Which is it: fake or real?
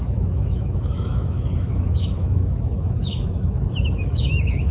fake